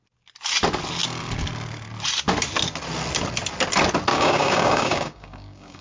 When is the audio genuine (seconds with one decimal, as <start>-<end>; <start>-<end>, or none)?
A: 0.0-4.1